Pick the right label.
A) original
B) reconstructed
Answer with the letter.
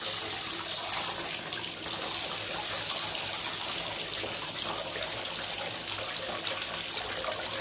A